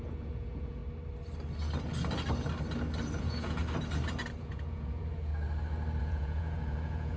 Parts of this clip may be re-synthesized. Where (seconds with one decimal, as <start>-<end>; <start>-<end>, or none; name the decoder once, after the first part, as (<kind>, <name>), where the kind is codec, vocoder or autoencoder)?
0.0-0.8 (vocoder, Vocos); 3.2-3.6; 4.4-5.3; 6.0-7.2